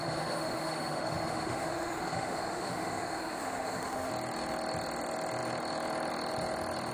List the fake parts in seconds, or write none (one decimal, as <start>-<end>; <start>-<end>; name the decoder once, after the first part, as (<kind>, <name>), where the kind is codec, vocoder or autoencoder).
0.0-4.1 (autoencoder, DAC-VAE)